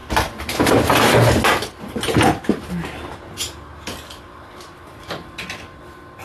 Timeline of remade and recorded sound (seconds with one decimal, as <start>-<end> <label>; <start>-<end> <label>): 0.0-6.2 recorded